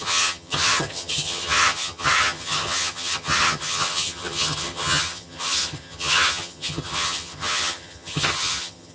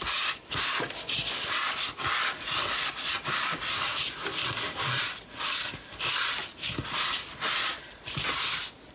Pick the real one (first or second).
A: second